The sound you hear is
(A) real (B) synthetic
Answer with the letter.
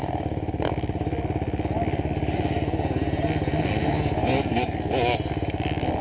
A